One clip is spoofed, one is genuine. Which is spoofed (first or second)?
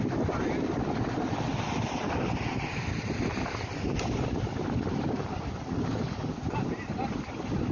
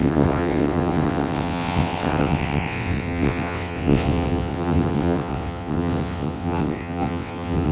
second